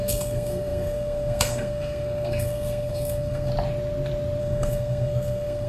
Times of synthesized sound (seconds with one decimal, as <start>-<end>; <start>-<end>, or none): 0.0-3.5; 4.4-5.7